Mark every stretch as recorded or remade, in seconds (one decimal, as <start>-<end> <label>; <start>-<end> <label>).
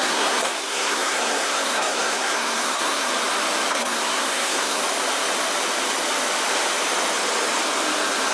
0.0-3.1 remade; 3.1-3.7 recorded; 3.7-4.8 remade; 4.8-8.3 recorded